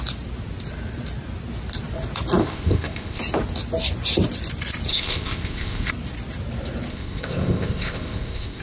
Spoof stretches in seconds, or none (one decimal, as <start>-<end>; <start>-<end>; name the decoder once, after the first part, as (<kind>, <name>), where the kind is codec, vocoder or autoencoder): 2.4-3.2 (codec, ZipCodec); 4.9-5.9; 6.9-8.6